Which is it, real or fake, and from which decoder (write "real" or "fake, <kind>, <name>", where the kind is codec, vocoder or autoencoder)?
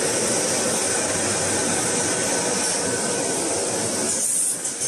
real